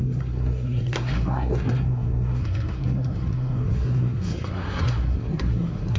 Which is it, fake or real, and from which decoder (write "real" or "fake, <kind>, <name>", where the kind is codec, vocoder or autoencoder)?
fake, codec, SNAC